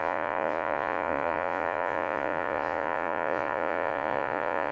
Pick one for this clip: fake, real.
fake